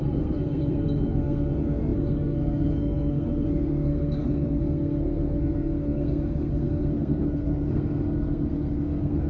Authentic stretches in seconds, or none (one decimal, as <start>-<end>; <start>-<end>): none